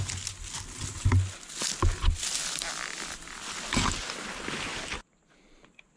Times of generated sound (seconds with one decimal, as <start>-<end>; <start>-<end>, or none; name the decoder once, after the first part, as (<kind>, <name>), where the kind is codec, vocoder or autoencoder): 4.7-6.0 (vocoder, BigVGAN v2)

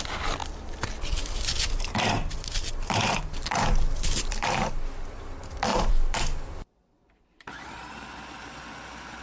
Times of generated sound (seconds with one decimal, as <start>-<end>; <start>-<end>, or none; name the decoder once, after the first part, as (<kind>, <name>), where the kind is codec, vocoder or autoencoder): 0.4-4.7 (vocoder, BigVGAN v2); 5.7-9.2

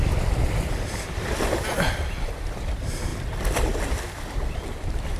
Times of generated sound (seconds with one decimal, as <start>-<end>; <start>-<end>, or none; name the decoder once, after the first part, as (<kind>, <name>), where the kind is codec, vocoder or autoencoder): 0.0-3.1 (vocoder, BigVGAN v2); 4.0-5.2

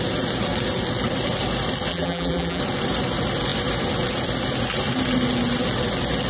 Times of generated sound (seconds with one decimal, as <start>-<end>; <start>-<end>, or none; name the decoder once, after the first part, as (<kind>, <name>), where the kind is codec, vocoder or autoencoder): 1.9-2.6 (vocoder, BigVGAN v2)

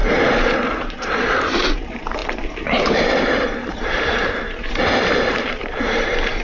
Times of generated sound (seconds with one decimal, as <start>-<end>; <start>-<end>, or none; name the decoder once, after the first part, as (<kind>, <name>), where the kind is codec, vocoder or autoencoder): 0.0-6.4 (vocoder, BigVGAN v2)

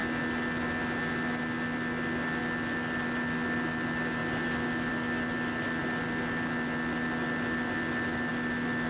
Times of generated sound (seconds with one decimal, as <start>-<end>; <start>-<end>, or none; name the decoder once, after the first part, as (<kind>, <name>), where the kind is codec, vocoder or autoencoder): none